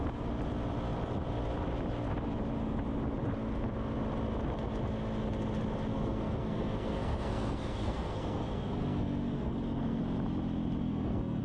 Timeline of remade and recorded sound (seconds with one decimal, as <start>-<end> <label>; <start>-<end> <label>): 0.0-5.9 recorded; 5.9-10.0 remade; 10.0-10.8 recorded; 10.8-11.4 remade